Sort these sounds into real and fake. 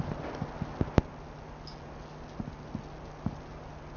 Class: real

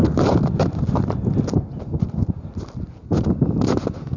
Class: real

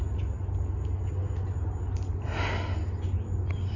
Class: real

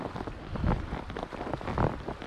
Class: real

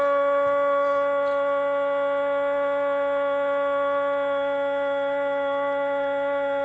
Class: real